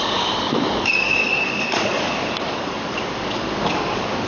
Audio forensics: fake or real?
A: fake